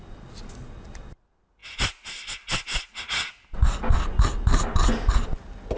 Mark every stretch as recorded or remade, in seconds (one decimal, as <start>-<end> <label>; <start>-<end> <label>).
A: 0.0-5.8 recorded